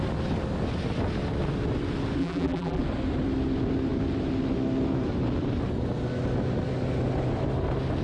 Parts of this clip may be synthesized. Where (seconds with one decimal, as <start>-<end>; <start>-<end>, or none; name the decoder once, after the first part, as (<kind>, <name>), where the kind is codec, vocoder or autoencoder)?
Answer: 2.2-2.8 (vocoder, BigVGAN v2)